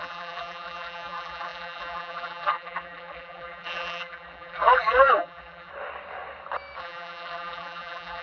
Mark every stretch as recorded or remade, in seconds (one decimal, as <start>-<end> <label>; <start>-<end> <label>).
0.0-5.7 remade; 5.7-6.8 recorded; 6.8-8.2 remade